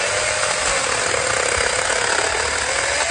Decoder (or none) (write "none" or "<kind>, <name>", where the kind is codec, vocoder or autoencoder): none